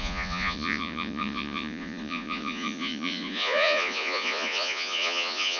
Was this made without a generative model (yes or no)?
no